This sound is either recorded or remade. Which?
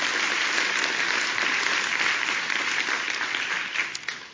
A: recorded